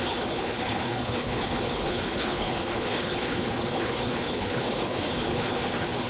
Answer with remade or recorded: remade